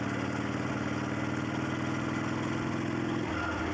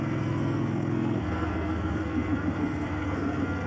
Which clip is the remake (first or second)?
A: second